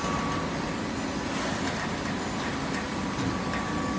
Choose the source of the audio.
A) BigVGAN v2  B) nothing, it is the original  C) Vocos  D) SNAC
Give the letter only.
B